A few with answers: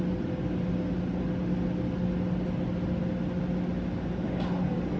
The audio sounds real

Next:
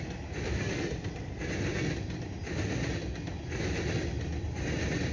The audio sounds real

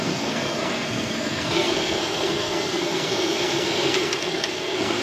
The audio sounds fake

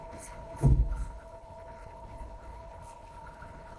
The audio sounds fake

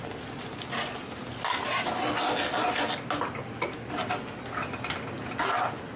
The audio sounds real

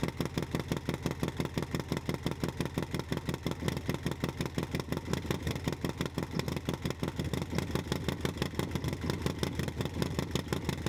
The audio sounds real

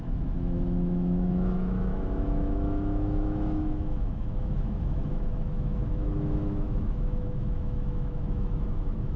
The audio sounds fake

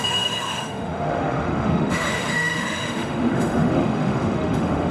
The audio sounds fake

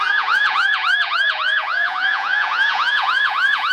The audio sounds fake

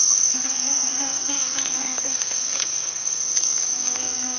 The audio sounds fake